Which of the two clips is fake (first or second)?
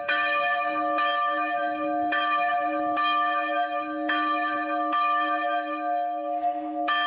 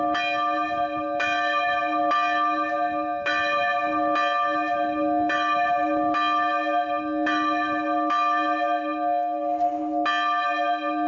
first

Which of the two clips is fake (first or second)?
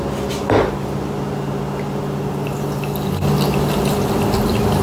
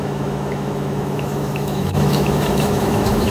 second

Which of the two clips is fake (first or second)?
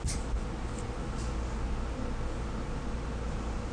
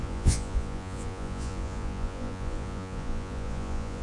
second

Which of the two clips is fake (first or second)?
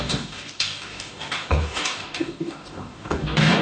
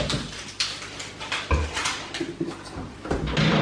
first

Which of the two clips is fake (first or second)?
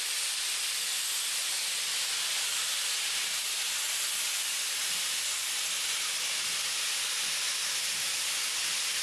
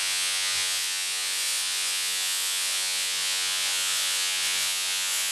second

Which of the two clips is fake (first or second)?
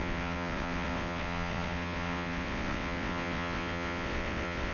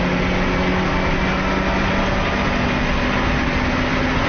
first